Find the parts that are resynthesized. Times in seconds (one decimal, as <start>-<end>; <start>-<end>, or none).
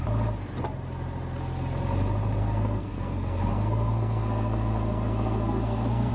2.4-6.1